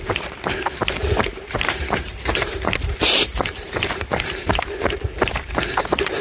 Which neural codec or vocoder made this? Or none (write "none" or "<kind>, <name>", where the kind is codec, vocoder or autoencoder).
vocoder, BigVGAN v2